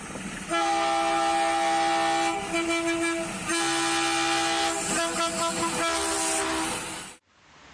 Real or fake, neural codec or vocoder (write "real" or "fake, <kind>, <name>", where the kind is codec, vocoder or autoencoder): real